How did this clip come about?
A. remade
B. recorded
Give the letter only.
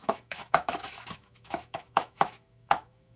A